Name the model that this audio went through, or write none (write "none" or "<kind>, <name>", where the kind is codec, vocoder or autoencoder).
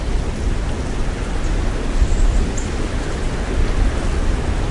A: none